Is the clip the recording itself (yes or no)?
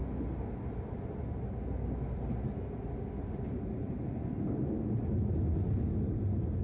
yes